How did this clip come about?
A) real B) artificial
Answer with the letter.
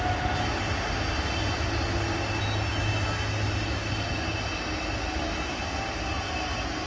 A